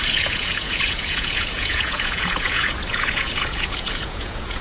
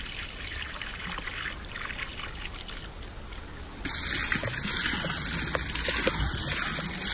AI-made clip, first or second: first